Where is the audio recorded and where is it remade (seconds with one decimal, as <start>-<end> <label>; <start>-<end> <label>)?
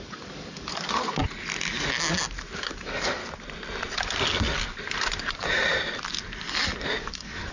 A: 0.0-1.2 remade; 1.2-2.6 recorded; 2.6-3.2 remade; 3.2-7.0 recorded; 7.0-7.5 remade